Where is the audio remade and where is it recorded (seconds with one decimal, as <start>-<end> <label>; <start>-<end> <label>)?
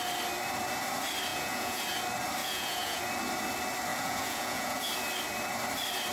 0.0-1.3 recorded; 1.3-1.8 remade; 1.8-2.4 recorded; 2.4-3.0 remade; 3.0-3.9 recorded; 3.9-4.9 remade; 4.9-6.1 recorded